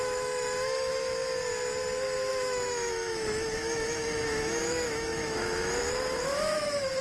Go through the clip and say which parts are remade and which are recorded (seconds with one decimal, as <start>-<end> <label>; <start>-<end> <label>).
0.0-0.9 remade; 0.9-2.3 recorded; 2.3-7.0 remade